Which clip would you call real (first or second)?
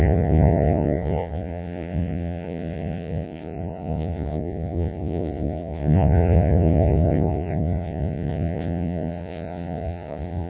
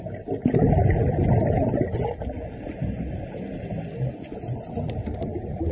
second